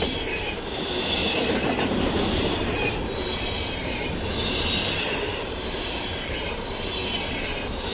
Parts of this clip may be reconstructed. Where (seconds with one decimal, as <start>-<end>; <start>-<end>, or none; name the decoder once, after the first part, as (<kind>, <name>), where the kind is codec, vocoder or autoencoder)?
0.0-1.2 (vocoder, BigVGAN v2); 1.8-7.9